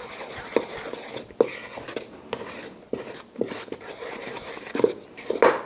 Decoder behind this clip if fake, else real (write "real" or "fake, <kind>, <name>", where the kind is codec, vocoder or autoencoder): real